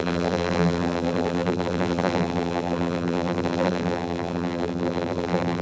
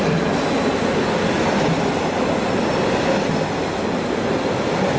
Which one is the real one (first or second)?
second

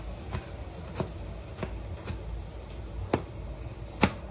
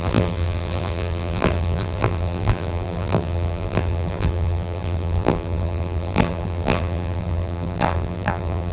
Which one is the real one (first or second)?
first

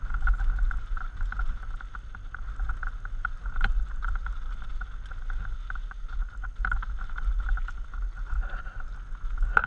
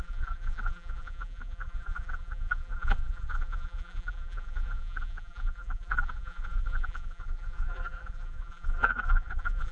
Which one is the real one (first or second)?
first